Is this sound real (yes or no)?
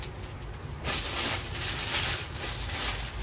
yes